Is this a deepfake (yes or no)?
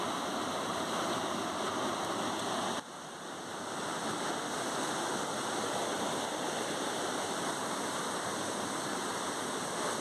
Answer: no